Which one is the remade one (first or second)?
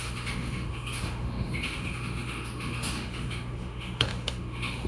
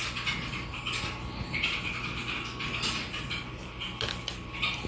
first